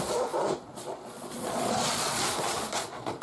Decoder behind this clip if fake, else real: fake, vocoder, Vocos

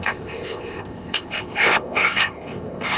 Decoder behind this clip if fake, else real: fake, codec, ZipCodec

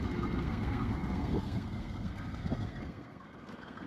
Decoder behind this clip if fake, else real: fake, codec, SNAC